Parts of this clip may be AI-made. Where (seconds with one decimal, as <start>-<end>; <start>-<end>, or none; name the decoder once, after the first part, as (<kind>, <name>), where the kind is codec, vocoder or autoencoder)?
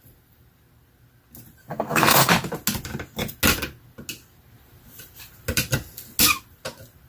1.7-2.3 (codec, SNAC)